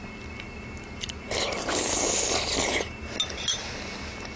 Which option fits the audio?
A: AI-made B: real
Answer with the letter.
B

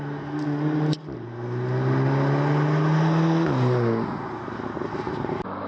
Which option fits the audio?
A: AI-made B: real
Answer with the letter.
B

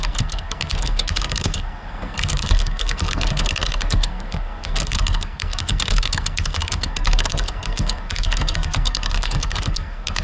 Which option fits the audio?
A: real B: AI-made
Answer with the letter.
B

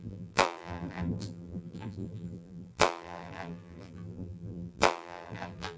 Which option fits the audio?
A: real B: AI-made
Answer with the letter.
B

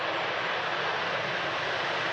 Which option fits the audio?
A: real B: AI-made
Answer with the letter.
A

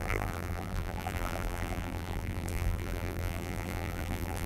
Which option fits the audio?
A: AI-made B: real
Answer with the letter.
A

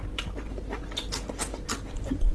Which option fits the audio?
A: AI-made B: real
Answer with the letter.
B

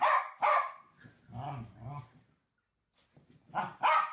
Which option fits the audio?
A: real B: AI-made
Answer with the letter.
A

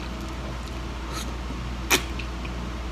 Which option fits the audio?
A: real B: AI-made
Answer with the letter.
A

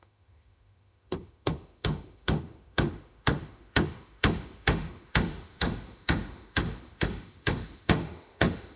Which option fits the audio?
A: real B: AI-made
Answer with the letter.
B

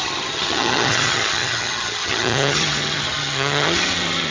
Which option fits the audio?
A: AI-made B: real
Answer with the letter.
A